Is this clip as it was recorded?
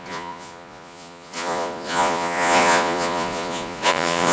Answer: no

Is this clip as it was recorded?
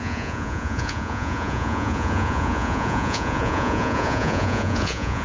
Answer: no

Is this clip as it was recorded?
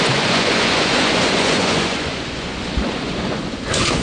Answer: no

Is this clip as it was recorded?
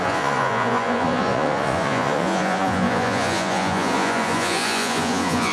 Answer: no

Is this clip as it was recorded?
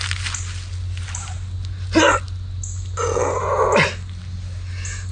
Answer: yes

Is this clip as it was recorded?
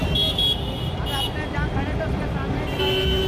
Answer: yes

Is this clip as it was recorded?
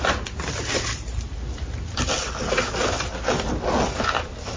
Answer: yes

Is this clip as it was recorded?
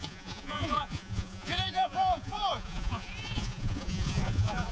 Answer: no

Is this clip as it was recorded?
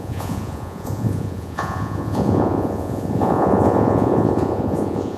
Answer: no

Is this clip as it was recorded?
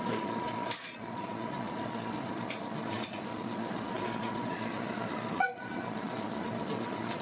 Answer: no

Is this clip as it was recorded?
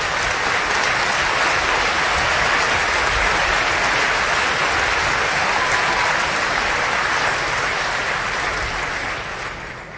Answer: yes